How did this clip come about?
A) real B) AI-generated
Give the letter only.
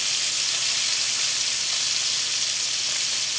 A